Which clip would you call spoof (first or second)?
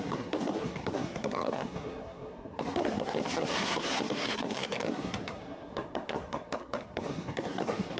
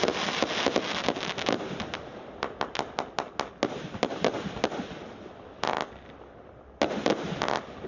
first